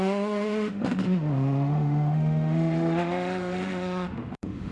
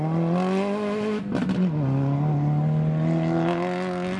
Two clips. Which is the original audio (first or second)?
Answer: second